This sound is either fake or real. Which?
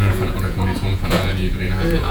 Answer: fake